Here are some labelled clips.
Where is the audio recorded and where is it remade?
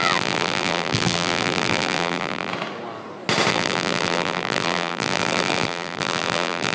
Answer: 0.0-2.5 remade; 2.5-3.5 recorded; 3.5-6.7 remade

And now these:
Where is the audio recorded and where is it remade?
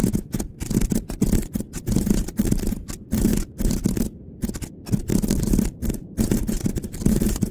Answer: 0.0-7.5 remade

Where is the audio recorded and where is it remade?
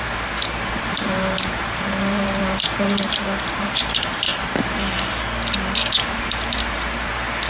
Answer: 0.0-4.3 remade; 4.3-6.0 recorded; 6.0-7.5 remade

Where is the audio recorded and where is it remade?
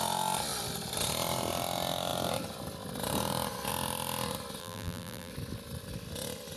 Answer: 0.0-4.6 recorded; 4.6-5.3 remade; 5.3-6.6 recorded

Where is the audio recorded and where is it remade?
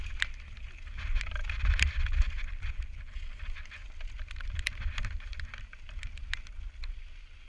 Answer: 0.0-1.4 recorded; 1.4-2.7 remade; 2.7-3.8 recorded; 3.8-6.1 remade; 6.1-7.5 recorded